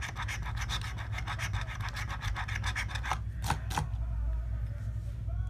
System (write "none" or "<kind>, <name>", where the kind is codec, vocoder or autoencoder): none